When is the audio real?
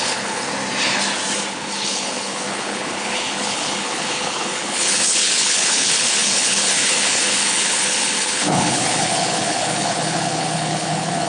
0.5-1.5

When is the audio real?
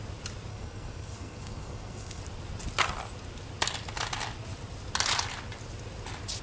0.0-0.5; 2.2-6.4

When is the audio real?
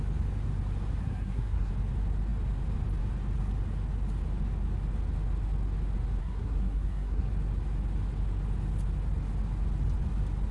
0.0-1.0; 1.7-6.2; 7.3-10.5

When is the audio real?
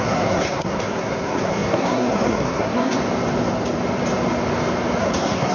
3.0-5.0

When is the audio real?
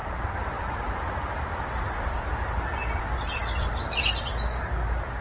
1.6-5.2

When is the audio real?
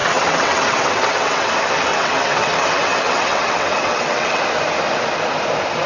1.5-1.9; 4.4-5.9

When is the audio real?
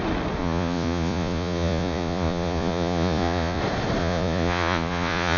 0.0-0.4; 3.6-4.0